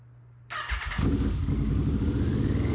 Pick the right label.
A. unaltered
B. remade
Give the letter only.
A